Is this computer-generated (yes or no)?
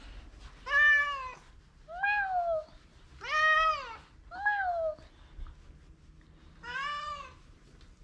no